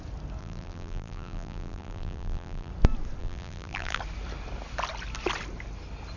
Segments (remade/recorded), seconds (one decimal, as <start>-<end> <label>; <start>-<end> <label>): 0.0-0.4 recorded; 0.4-2.7 remade; 2.7-3.2 recorded; 3.2-4.0 remade; 4.0-6.2 recorded